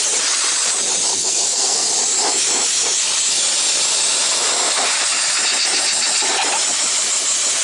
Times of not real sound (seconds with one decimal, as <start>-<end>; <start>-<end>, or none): 1.1-1.9